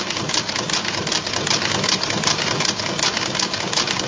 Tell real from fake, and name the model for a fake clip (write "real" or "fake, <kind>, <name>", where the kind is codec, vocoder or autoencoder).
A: real